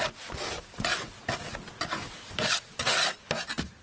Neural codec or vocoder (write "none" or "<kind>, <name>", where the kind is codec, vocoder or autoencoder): none